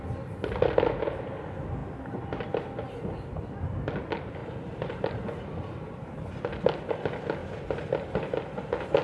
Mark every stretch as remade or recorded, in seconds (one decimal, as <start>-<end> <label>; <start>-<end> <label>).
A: 0.0-9.0 recorded